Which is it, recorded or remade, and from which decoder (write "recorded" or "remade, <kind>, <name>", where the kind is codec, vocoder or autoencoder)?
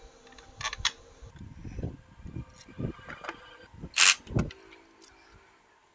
recorded